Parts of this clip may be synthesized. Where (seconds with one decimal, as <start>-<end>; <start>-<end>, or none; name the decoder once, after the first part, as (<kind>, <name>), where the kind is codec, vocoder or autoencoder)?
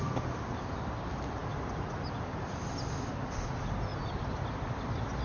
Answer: none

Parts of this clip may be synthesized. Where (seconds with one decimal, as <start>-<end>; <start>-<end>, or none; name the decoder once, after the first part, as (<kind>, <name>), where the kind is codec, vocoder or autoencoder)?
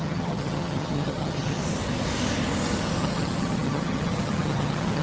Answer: 0.0-1.6 (vocoder, HiFi-GAN); 3.0-5.0